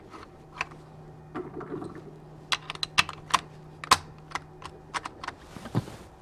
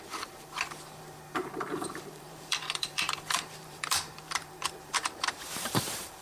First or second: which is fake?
second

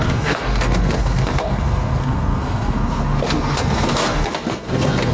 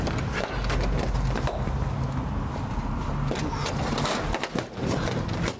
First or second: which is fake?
first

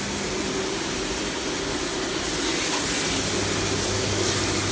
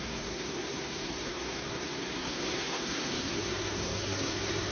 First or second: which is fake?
second